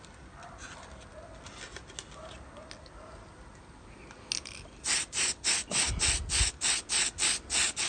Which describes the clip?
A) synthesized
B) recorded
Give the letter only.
B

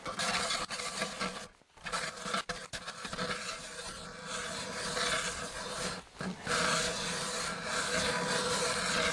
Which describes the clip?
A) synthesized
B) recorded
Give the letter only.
B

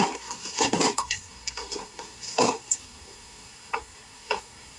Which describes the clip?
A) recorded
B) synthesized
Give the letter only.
B